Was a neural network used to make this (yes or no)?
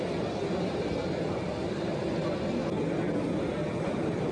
no